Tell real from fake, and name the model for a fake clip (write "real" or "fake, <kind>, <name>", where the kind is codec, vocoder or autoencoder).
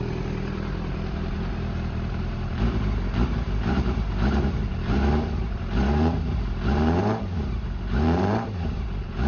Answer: fake, vocoder, BigVGAN v2